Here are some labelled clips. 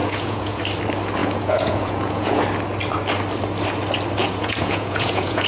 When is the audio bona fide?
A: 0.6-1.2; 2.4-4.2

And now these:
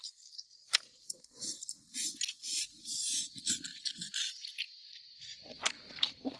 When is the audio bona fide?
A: 0.0-6.4

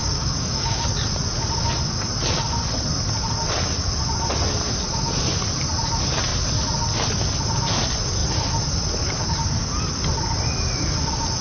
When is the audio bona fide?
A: 0.9-11.4

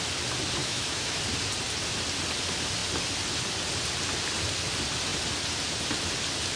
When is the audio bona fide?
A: 0.0-0.6; 1.2-6.6

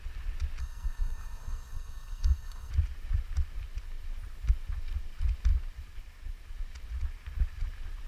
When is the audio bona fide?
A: 0.0-0.6; 2.7-8.1

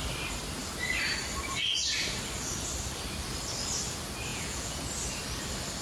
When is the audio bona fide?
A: 0.0-4.3; 4.8-5.8

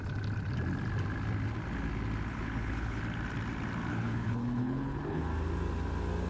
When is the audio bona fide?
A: 0.0-2.3; 3.0-3.9; 5.2-6.3